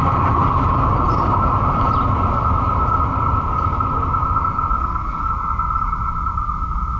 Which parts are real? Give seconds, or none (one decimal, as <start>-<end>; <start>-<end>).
0.0-4.8; 5.3-7.0